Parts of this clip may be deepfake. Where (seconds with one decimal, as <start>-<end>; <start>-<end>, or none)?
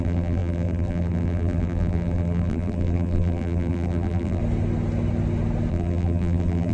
0.0-4.4; 5.7-6.7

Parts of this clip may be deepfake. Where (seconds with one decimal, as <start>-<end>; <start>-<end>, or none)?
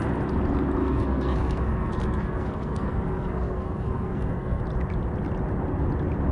0.8-4.6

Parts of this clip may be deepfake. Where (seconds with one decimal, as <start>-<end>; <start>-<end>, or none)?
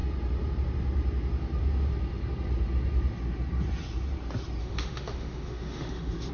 4.6-6.3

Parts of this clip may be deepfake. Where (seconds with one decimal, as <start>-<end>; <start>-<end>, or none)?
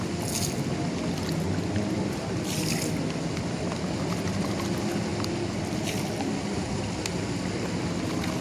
none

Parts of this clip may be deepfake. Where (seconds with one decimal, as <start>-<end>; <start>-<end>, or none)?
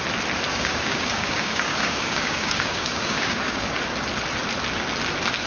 0.5-3.8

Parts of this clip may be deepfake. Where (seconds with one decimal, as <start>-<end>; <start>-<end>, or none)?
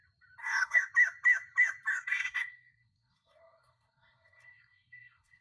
0.4-0.9; 1.9-5.4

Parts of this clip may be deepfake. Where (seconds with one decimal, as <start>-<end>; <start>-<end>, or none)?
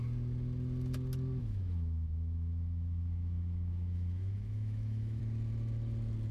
1.4-5.2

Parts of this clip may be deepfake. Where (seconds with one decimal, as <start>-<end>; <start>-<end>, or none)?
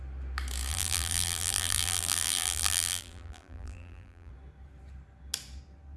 0.7-4.3